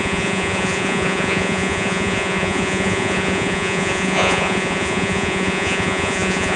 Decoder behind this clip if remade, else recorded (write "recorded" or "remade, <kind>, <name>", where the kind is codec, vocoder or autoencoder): remade, vocoder, Vocos